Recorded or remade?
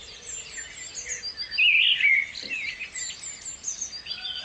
recorded